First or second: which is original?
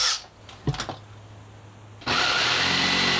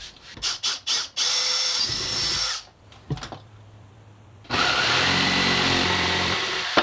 first